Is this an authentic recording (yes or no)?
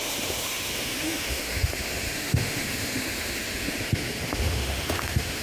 no